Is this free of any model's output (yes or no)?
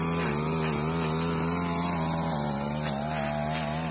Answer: yes